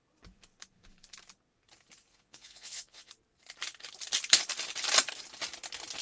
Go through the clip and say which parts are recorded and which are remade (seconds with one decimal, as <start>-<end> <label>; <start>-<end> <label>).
0.0-2.1 recorded; 2.1-3.1 remade; 3.1-6.0 recorded